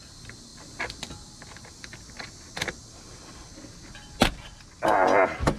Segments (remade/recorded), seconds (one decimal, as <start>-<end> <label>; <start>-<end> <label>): 0.0-5.6 recorded